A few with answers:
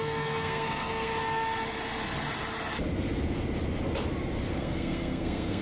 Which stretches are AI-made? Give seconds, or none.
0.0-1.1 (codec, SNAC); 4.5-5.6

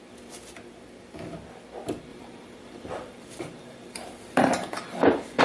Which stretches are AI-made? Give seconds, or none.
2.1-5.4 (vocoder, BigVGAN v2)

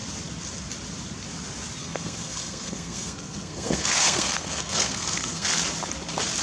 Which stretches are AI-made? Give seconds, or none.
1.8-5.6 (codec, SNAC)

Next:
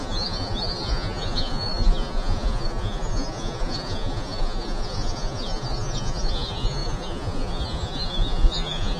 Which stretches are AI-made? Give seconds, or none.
0.0-9.0 (vocoder, Vocos)

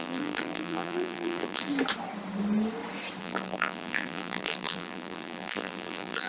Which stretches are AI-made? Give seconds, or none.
0.0-1.7 (vocoder, BigVGAN v2); 3.2-6.3

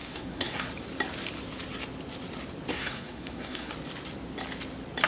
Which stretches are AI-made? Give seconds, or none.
0.0-0.7 (codec, SNAC); 2.7-3.7

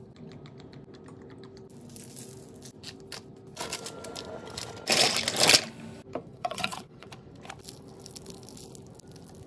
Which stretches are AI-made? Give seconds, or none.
6.3-7.1 (vocoder, WaveNeXt)

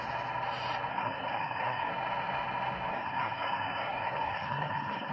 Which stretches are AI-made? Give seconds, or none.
0.9-1.9 (codec, SNAC); 2.9-5.1